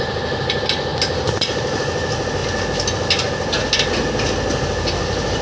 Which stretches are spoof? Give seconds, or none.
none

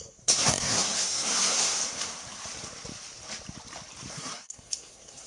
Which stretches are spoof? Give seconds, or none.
0.0-1.8 (codec, SNAC); 4.1-5.3

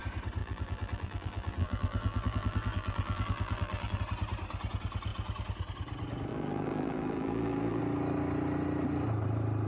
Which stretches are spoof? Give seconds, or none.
0.4-4.0 (vocoder, BigVGAN v2); 6.3-7.8

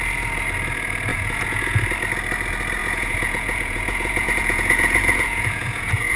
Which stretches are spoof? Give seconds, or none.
1.1-1.8 (vocoder, Vocos); 2.8-6.2

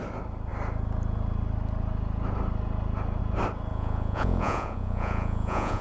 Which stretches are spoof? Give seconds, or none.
3.7-5.8 (vocoder, Vocos)